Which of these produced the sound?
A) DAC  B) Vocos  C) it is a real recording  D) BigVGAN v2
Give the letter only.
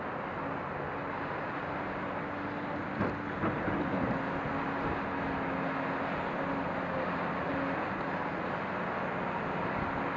C